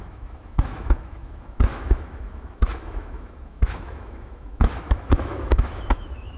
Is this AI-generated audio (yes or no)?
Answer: yes